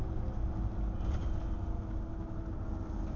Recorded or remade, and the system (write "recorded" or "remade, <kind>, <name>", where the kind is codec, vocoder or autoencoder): recorded